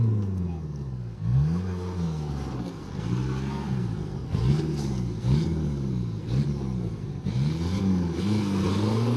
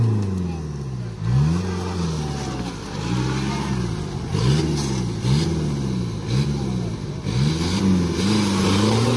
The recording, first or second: second